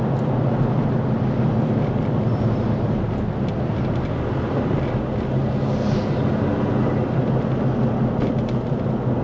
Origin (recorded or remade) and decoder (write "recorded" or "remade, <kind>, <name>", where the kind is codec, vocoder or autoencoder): recorded